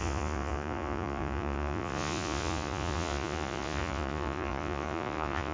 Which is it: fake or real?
fake